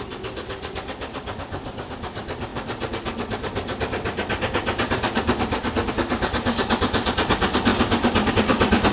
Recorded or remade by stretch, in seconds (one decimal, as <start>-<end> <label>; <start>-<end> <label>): 0.0-8.9 recorded